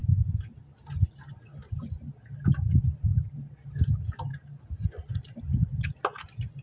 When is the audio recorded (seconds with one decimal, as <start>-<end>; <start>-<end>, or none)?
0.0-6.6